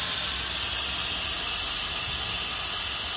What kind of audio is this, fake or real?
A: real